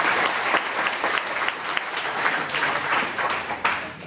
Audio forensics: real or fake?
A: fake